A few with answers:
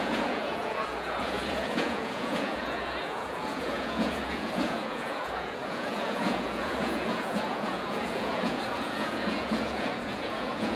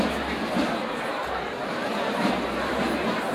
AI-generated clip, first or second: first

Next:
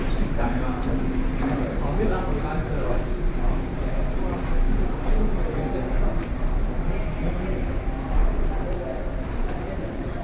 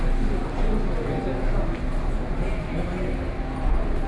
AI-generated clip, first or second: first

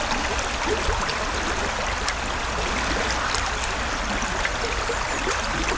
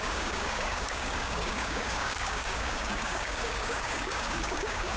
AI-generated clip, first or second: second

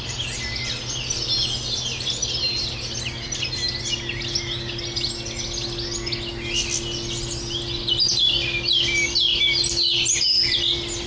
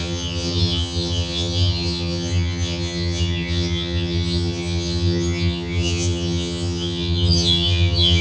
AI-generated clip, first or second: second